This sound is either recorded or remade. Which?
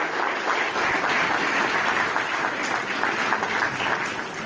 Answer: recorded